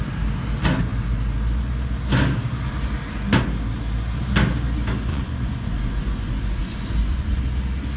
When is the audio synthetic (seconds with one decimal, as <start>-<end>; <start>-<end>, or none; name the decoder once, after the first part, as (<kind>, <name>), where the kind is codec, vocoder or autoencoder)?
5.1-7.4 (vocoder, Vocos)